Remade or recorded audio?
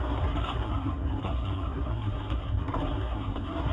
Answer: remade